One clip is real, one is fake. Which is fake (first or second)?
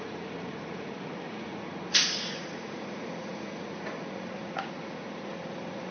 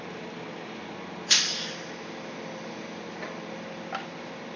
first